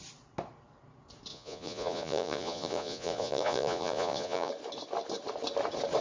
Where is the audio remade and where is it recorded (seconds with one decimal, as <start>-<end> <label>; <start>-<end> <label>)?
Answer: 0.0-1.3 recorded; 1.3-4.5 remade; 4.5-6.0 recorded